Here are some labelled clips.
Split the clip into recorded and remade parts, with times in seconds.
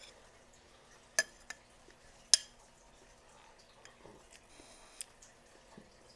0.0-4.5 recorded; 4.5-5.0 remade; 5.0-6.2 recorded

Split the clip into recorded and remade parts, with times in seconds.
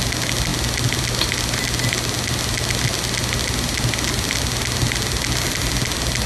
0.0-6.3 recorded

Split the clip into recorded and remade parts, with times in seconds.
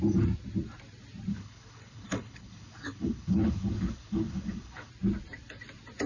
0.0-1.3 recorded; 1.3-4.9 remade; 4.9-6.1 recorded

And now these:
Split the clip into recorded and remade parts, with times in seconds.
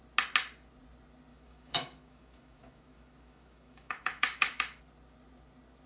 0.0-1.3 recorded; 1.3-4.8 remade; 4.8-5.9 recorded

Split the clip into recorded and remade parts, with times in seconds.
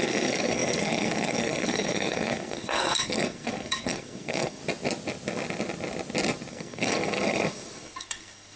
0.0-4.6 remade; 4.6-6.5 recorded; 6.5-8.6 remade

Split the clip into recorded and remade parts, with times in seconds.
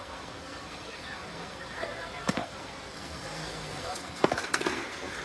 0.0-5.2 remade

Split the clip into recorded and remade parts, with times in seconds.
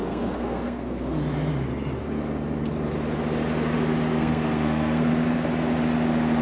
0.0-1.0 remade; 1.0-4.1 recorded; 4.1-5.1 remade; 5.1-6.4 recorded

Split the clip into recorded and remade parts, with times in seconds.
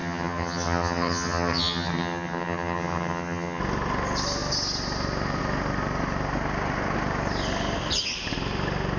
0.0-3.6 remade; 3.6-9.0 recorded